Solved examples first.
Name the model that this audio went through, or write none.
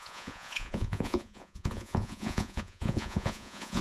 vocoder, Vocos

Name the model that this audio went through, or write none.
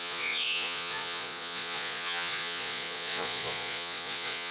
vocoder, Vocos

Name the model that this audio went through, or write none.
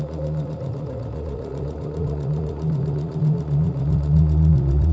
vocoder, Vocos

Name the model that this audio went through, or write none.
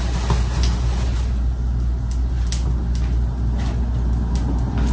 none